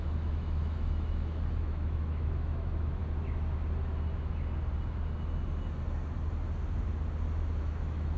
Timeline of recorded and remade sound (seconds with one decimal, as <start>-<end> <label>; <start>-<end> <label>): 0.0-3.0 remade; 3.0-7.6 recorded; 7.6-8.2 remade